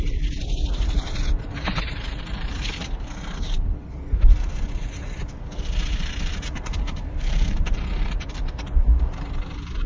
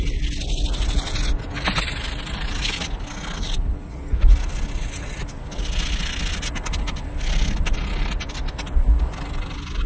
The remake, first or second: first